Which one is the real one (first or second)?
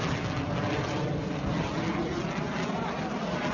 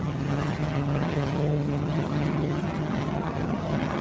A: first